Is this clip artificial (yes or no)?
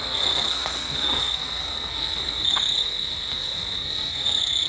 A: yes